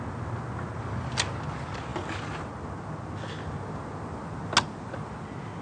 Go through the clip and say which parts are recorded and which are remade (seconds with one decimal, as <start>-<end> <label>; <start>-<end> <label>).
0.0-5.6 recorded